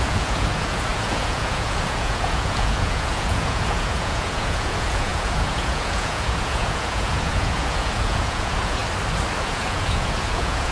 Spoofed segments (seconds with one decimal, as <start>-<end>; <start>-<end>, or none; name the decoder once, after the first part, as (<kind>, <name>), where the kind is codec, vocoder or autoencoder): 0.0-8.8 (vocoder, Vocos); 9.4-10.7